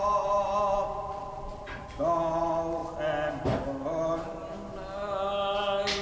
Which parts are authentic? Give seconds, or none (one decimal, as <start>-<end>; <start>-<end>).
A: 0.0-6.0